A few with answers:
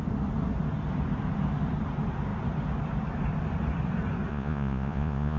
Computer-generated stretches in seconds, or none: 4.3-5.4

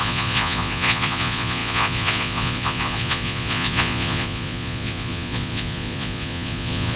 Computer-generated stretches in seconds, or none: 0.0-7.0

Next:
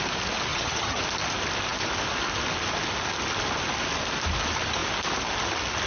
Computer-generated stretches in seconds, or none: 0.5-1.0

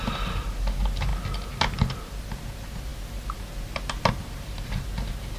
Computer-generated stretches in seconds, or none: none